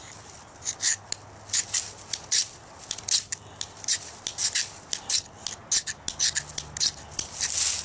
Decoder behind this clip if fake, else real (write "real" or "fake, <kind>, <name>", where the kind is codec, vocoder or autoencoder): real